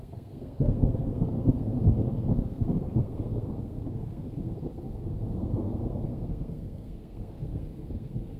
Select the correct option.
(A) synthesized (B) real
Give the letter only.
A